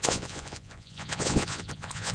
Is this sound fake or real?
fake